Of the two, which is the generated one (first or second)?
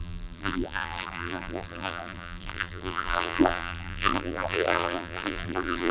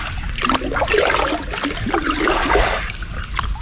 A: first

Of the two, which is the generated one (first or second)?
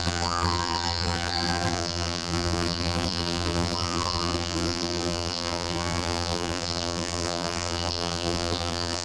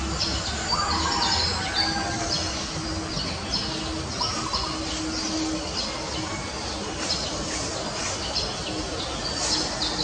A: first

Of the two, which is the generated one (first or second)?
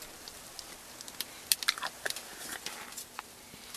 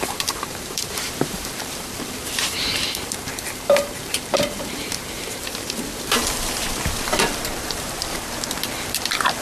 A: second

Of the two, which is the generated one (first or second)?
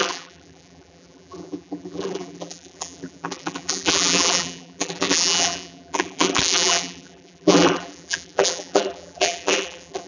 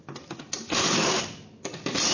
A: first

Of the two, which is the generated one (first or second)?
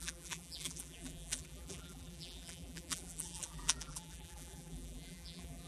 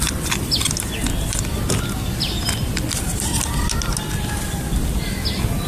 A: first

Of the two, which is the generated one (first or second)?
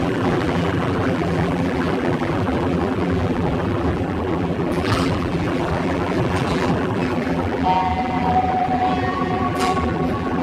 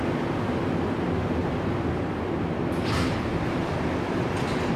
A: first